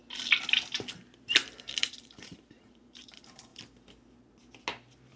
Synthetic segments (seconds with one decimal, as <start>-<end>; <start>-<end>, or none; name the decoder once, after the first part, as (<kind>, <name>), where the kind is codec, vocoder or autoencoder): 1.7-3.5 (vocoder, BigVGAN v2)

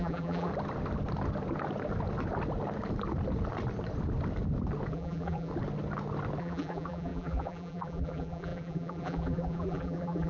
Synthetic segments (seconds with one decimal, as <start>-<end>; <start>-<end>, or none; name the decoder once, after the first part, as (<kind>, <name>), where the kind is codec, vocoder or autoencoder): 0.0-0.5 (vocoder, BigVGAN v2); 4.9-5.5; 6.4-10.3

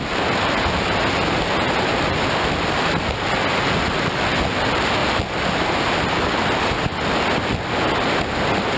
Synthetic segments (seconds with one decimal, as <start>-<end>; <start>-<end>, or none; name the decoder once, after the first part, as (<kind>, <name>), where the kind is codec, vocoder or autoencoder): none

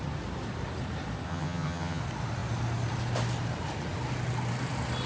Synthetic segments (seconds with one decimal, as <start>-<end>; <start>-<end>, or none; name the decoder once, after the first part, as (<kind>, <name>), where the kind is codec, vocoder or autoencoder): 1.3-2.0 (vocoder, HiFi-GAN)

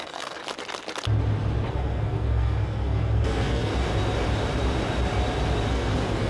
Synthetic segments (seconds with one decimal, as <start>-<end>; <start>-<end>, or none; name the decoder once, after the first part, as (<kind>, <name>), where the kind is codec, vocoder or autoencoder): 0.0-0.4 (codec, SNAC); 1.7-3.7; 5.7-6.3

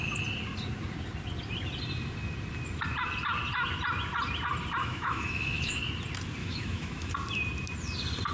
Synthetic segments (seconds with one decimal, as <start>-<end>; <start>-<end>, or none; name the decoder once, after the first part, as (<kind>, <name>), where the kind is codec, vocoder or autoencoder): 4.8-5.8 (autoencoder, DAC-VAE); 6.4-7.1

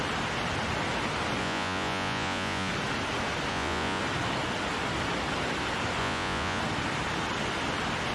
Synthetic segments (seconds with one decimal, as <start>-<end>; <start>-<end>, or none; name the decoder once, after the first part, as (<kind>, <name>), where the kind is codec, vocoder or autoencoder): 1.4-2.7 (vocoder, Vocos); 3.5-4.0; 6.0-6.6